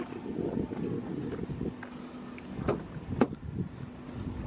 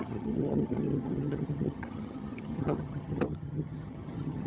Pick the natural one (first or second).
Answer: first